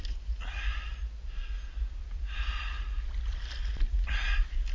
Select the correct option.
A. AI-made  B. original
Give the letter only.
B